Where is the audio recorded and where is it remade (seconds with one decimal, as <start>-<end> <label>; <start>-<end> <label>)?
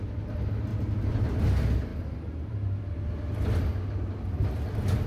0.0-0.7 recorded; 0.7-1.4 remade; 1.4-5.1 recorded